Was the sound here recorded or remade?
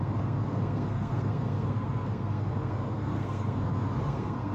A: remade